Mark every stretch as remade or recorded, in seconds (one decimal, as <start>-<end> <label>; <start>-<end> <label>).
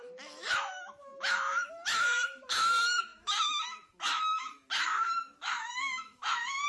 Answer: 0.0-6.7 remade